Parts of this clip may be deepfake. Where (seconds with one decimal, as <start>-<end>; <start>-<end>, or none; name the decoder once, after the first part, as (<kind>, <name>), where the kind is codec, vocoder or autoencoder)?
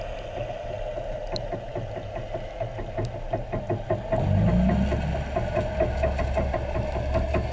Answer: none